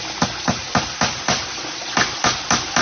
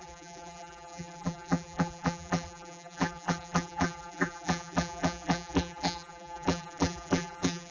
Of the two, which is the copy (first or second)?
second